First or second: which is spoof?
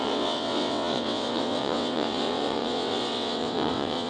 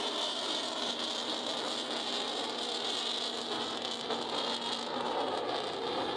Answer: first